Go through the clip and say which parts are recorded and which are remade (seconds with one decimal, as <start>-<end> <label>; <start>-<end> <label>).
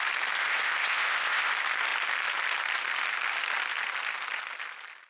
0.0-0.4 recorded; 0.4-1.5 remade; 1.5-5.1 recorded